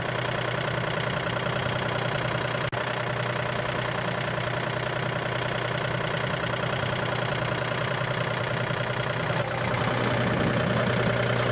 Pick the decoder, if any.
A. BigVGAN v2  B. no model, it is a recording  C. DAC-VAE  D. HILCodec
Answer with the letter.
B